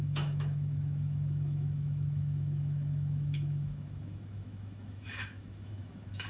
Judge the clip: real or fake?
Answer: fake